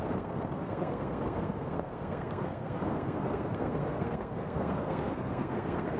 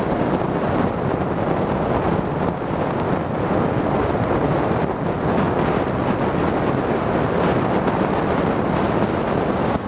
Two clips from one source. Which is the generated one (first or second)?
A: first